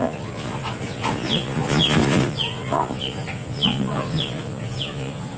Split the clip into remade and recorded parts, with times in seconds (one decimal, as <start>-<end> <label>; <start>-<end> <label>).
0.0-5.4 remade